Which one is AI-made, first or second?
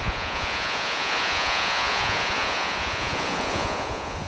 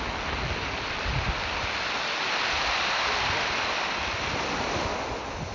first